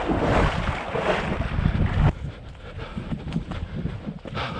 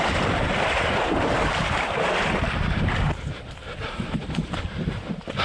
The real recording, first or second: first